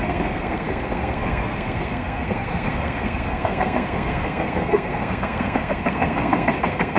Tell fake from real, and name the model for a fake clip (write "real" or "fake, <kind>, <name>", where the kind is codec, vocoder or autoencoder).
fake, codec, SNAC